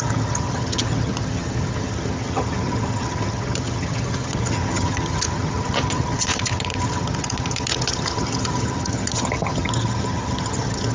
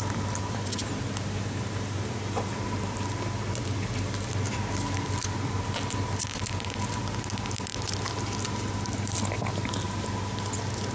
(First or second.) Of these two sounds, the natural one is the second